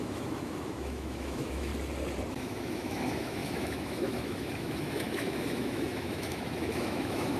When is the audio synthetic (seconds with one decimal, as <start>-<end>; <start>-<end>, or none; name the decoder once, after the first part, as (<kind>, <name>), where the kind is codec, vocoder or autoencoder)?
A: 0.0-1.7 (autoencoder, DAC-VAE); 2.3-7.4